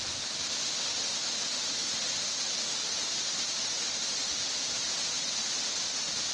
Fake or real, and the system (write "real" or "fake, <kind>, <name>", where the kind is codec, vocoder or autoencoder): real